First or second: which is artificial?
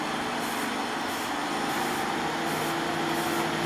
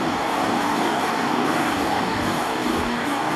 second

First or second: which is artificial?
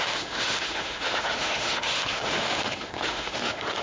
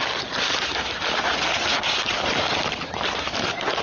first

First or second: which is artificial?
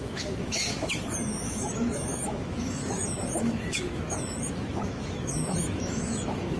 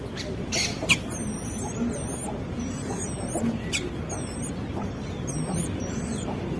first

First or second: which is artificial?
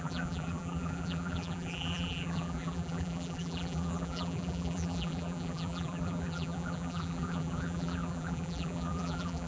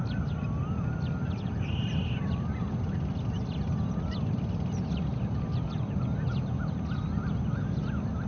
first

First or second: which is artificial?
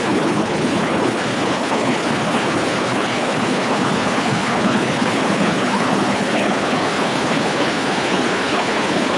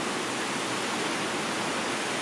first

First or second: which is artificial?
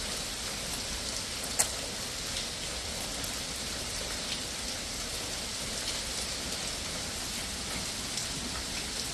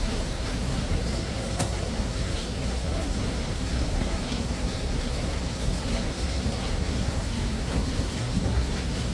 second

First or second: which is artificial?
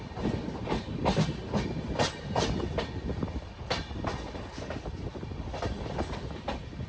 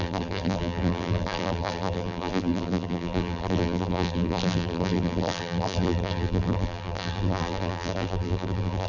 second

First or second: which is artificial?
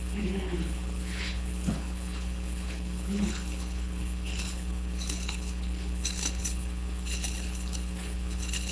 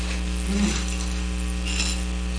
first